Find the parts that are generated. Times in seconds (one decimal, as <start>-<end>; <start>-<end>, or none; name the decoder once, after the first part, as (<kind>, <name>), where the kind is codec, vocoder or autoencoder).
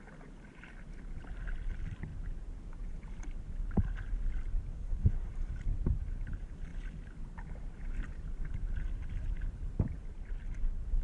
4.7-5.3 (codec, SNAC)